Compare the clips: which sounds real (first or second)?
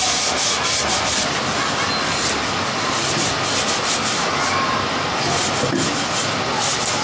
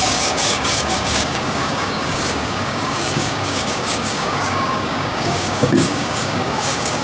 first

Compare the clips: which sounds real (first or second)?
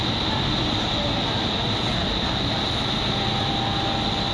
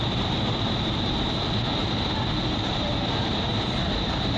first